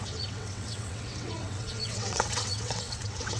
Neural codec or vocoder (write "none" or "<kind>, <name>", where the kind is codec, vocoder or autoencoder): vocoder, WaveNeXt